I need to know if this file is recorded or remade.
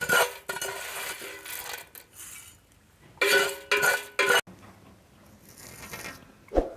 recorded